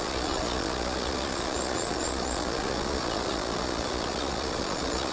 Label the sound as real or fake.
fake